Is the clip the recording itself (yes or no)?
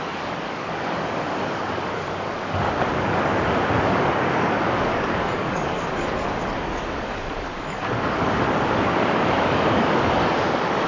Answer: no